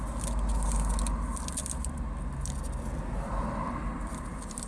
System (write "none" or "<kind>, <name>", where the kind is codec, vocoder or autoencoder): none